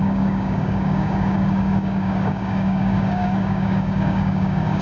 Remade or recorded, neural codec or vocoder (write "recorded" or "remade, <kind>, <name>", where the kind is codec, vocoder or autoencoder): remade, codec, DAC